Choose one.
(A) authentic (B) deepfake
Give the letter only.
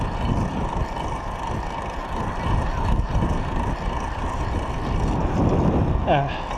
A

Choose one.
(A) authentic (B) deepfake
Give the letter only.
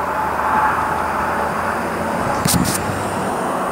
B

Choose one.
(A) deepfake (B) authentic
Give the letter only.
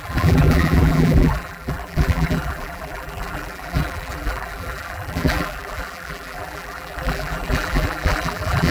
A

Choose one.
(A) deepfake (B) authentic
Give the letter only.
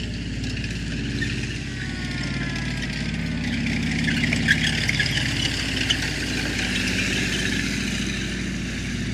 B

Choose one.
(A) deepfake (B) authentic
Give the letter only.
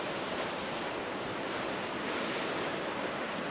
A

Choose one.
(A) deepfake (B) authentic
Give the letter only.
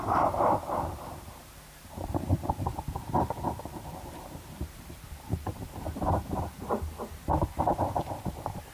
A